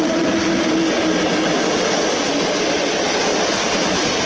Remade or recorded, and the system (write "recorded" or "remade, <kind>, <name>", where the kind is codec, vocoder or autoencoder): recorded